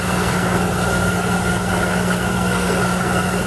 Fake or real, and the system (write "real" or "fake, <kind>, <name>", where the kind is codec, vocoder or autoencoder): fake, codec, SNAC